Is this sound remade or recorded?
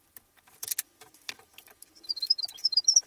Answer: remade